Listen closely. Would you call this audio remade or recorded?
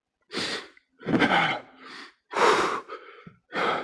recorded